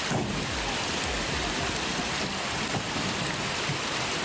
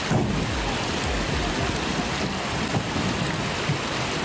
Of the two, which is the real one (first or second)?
second